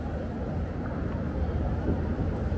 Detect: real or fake real